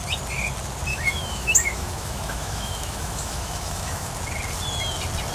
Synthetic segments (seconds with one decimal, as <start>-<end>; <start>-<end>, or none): 0.9-4.1